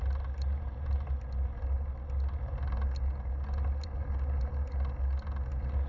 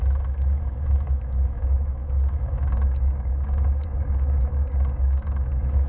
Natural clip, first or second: first